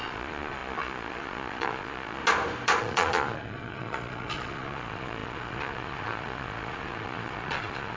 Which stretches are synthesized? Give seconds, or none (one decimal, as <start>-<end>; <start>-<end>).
0.0-2.2; 2.8-8.0